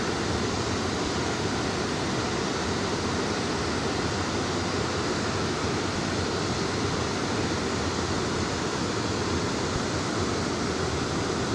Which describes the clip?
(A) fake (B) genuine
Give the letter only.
B